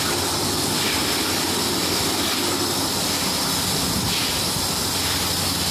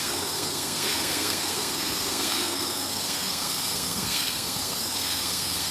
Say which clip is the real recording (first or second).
first